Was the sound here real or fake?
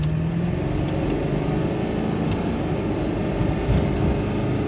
real